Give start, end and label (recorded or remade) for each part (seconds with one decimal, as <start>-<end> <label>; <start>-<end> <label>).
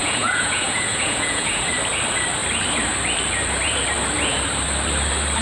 0.0-1.6 remade; 1.6-5.4 recorded